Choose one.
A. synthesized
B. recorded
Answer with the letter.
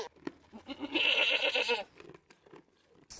B